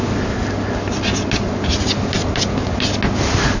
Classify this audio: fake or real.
real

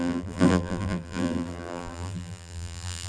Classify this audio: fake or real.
fake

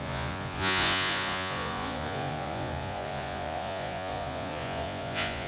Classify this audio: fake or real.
fake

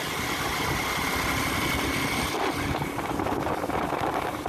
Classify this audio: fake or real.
real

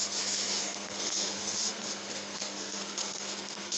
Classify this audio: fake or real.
fake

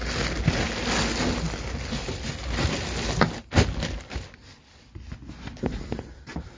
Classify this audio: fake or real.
real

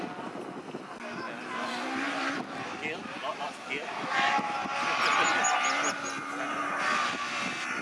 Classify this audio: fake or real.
real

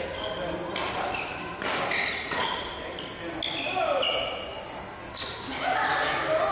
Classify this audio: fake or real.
real